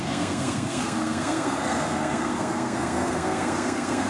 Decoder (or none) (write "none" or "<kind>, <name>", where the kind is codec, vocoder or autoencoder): codec, SNAC